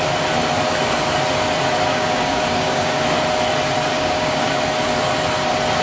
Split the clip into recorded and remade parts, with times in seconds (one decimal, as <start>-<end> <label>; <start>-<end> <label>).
0.0-1.9 recorded; 1.9-3.0 remade; 3.0-3.9 recorded; 3.9-4.5 remade; 4.5-5.8 recorded